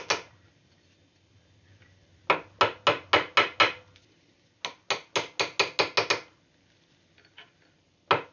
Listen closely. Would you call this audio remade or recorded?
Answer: recorded